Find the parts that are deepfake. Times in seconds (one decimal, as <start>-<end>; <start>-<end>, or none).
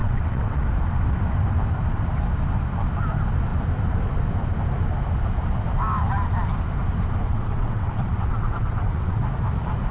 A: 0.0-0.6; 7.3-9.2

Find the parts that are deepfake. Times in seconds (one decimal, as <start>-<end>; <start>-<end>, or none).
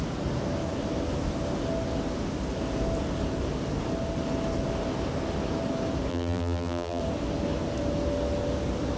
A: 6.1-7.0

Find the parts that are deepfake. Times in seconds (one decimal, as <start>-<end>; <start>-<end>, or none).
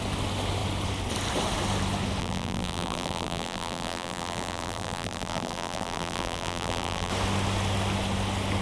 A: 2.2-7.1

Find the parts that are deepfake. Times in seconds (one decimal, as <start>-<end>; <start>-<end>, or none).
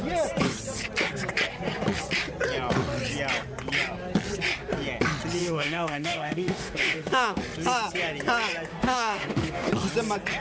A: 5.4-7.4; 8.7-9.7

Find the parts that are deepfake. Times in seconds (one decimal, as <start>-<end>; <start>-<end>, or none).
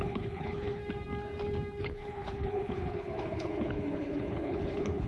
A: 0.0-0.8; 1.8-5.1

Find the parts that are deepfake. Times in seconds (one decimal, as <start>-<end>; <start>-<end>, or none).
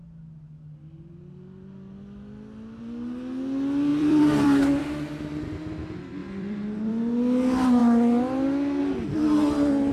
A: 3.9-4.6; 6.2-6.9